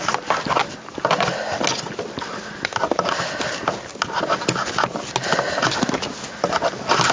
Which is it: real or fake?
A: real